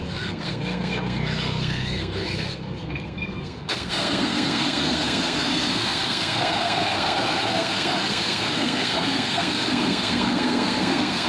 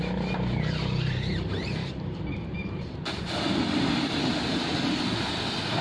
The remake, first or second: first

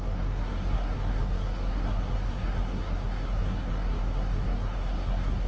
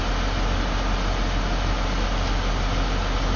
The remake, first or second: first